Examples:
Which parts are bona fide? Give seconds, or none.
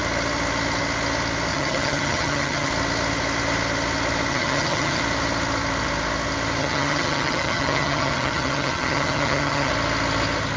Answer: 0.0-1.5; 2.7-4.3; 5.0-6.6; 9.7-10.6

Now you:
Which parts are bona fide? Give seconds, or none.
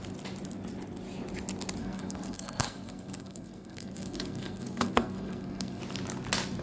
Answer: 0.0-1.8; 5.8-6.6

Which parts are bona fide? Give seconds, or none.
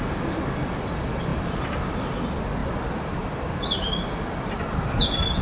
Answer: 0.0-2.6; 4.5-5.4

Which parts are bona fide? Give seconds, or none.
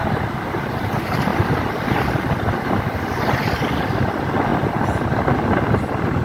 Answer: 0.7-1.3; 4.1-6.2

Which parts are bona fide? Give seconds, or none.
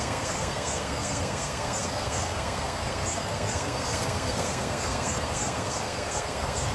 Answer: none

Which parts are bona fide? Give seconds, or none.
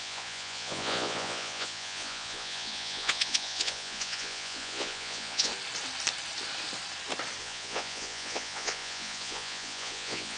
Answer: 5.5-7.4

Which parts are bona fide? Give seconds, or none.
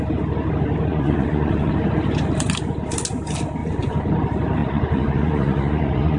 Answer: 0.0-0.9; 1.7-3.6; 4.1-4.6